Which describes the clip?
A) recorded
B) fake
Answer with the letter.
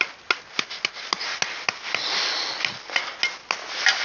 A